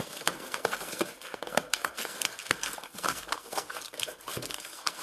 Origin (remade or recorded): remade